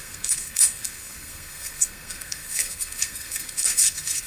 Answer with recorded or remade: remade